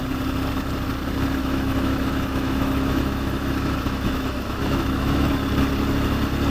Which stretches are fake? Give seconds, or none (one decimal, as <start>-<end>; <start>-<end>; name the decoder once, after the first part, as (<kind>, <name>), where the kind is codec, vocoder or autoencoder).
1.4-5.3 (autoencoder, DAC-VAE)

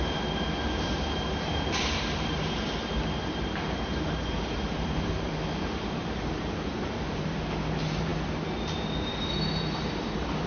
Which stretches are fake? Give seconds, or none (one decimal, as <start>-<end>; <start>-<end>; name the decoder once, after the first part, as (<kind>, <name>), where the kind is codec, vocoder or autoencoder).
0.0-8.1 (vocoder, BigVGAN v2); 8.8-10.5

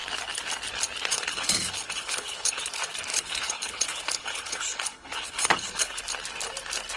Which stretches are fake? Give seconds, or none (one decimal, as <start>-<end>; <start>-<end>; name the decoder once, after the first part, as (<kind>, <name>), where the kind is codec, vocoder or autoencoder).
1.1-2.6 (codec, HILCodec); 3.1-6.0

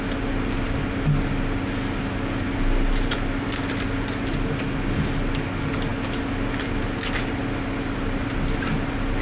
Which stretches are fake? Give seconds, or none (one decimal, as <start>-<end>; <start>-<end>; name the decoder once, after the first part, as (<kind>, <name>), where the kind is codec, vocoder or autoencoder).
none